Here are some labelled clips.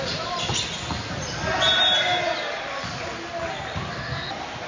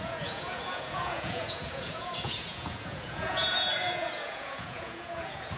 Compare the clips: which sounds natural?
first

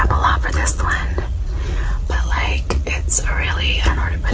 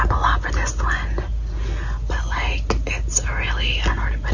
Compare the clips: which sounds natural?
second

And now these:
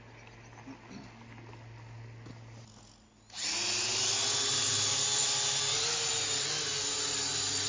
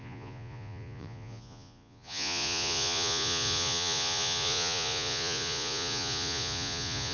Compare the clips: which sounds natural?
first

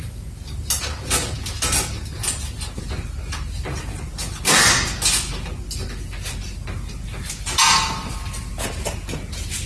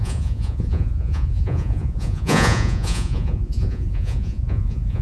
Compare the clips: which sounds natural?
first